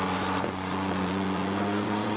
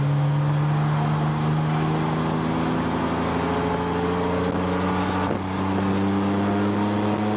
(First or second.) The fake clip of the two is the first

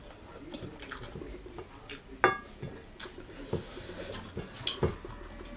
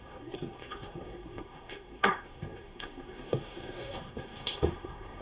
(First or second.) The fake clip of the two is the second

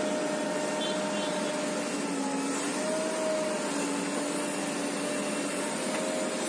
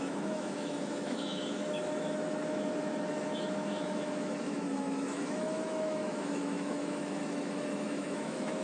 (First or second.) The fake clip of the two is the second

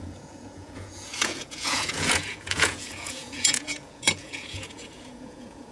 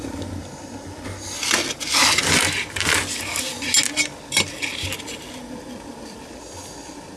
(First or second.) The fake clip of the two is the first